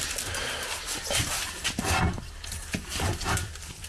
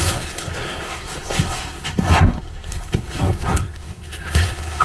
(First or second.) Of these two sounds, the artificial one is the second